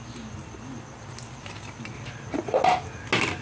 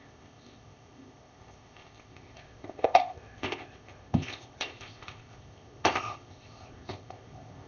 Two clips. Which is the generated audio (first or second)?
second